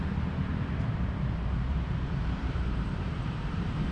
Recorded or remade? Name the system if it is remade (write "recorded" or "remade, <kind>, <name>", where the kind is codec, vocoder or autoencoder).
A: remade, vocoder, BigVGAN v2